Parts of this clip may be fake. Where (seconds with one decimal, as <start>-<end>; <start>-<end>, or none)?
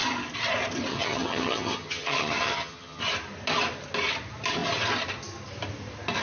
0.9-3.0